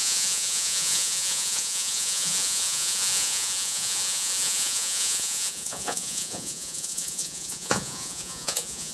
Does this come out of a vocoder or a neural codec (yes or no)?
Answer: yes